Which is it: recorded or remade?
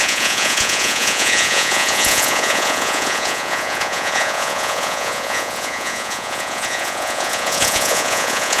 remade